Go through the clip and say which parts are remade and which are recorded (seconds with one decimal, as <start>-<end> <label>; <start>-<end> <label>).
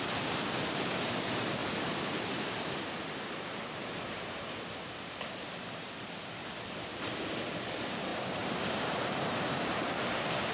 0.0-1.6 remade; 1.6-3.2 recorded; 3.2-3.6 remade; 3.6-6.0 recorded; 6.0-10.5 remade